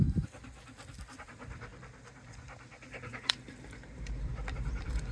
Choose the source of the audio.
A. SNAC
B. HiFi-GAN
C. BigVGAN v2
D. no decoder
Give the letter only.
C